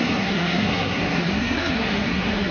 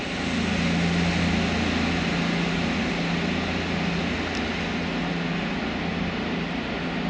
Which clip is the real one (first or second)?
second